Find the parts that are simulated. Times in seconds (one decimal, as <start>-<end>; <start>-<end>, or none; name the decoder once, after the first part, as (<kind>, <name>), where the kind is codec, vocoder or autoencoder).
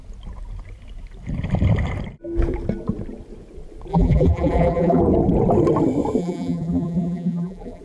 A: 3.9-5.0 (vocoder, BigVGAN v2); 6.2-7.8